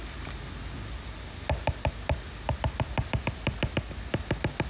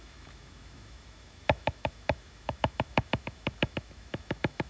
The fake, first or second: second